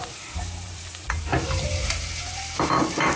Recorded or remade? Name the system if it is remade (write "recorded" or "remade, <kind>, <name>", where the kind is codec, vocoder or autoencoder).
remade, vocoder, BigVGAN v2